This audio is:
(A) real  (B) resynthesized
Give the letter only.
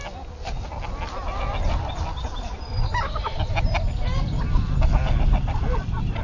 A